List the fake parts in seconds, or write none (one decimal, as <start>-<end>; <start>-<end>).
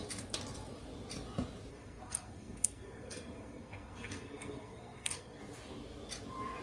1.7-5.4